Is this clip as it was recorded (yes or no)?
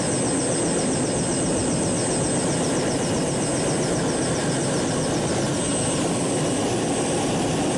yes